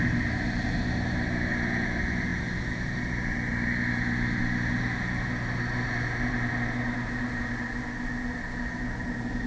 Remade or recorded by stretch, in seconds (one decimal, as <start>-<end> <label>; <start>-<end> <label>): 0.0-9.5 recorded